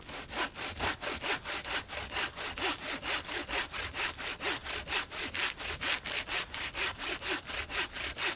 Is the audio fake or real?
real